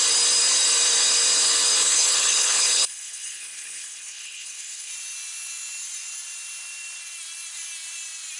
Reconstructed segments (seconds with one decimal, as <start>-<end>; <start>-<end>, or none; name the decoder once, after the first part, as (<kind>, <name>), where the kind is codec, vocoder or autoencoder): 1.8-4.9 (codec, HILCodec)